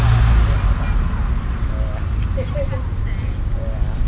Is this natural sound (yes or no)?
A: yes